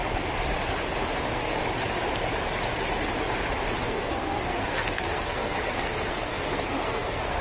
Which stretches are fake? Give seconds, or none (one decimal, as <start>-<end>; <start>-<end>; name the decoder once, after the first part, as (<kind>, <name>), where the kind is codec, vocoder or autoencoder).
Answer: 1.2-1.6 (codec, SNAC); 3.8-7.4

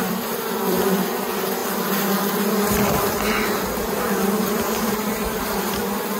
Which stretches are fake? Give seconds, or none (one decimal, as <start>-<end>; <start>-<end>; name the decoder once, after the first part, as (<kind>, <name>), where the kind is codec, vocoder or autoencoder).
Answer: 0.0-1.6 (vocoder, BigVGAN v2); 3.9-6.2

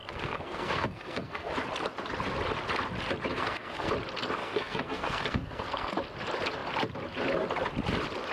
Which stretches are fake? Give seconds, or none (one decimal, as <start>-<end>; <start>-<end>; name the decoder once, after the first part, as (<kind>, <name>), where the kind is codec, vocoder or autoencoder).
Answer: 0.0-1.5 (codec, SNAC); 3.3-3.9; 4.4-5.9

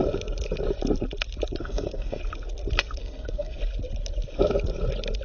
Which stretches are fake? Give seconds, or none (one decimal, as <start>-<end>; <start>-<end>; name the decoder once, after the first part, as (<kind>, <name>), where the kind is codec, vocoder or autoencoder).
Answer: 1.6-2.2 (codec, SNAC); 3.0-3.6